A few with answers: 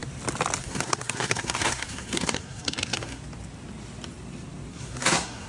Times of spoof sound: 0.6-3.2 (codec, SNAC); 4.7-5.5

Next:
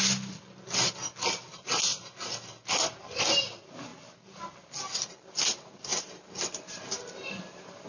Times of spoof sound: none